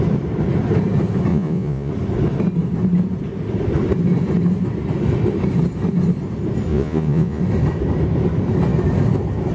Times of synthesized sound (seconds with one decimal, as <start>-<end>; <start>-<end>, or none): 1.3-1.9; 6.7-7.4